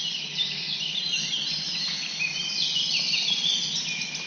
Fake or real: real